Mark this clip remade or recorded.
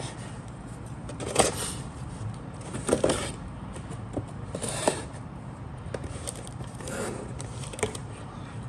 remade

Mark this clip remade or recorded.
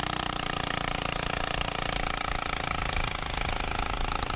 remade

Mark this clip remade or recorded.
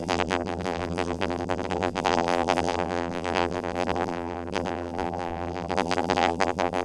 remade